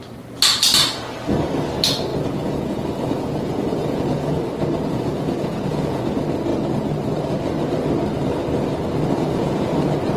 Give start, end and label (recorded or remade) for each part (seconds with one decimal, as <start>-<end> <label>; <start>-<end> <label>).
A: 0.0-2.1 recorded; 2.1-4.4 remade; 4.4-4.9 recorded; 4.9-6.1 remade; 6.1-9.2 recorded; 9.2-9.7 remade; 9.7-10.2 recorded